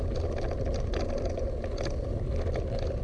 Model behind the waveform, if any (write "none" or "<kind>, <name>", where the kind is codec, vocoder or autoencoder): none